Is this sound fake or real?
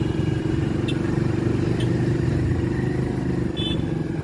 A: real